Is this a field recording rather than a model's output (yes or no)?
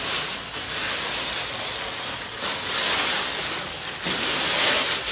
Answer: yes